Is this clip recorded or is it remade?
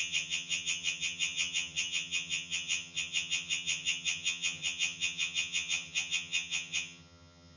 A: remade